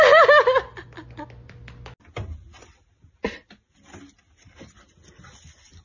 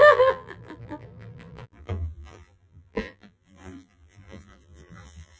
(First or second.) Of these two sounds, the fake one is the second